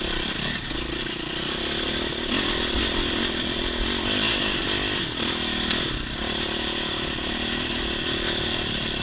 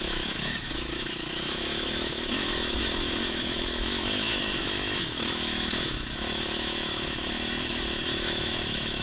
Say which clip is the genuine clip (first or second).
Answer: first